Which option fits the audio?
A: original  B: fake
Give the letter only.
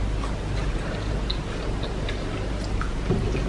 A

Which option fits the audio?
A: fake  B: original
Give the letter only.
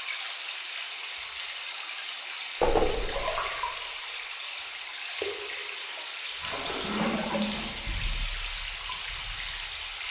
B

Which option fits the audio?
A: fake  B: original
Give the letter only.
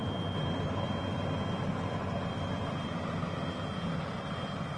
B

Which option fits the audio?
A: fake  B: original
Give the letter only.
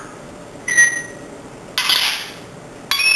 B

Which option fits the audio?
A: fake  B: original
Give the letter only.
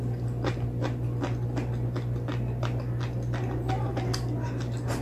B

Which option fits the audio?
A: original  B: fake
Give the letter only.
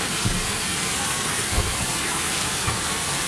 B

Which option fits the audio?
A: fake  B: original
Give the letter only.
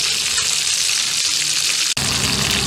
B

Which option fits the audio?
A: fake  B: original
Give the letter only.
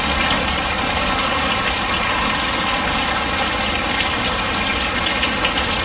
B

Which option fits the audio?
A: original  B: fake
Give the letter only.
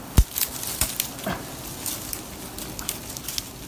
A